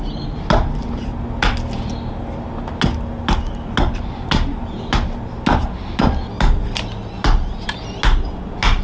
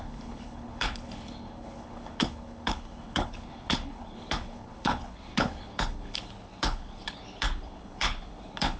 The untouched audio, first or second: first